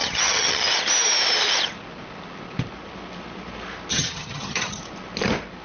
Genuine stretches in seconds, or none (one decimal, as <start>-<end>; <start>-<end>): 0.7-3.9; 4.8-5.6